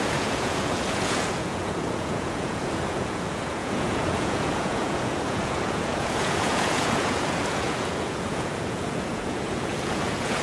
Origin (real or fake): fake